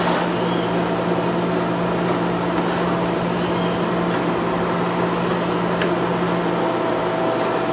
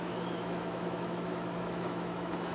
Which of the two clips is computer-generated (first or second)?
second